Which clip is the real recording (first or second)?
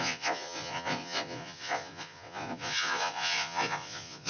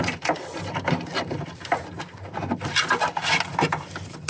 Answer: second